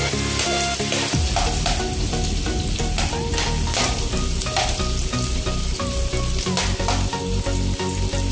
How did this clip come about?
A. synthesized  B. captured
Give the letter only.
B